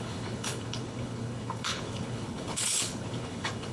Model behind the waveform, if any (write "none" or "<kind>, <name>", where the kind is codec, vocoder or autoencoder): codec, HILCodec